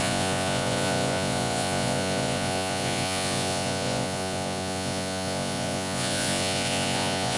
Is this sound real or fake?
fake